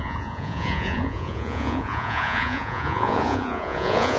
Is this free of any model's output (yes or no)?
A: no